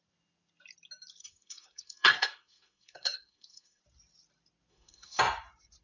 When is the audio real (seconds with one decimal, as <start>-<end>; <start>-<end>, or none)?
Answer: 0.0-1.2; 3.8-4.7; 5.2-5.8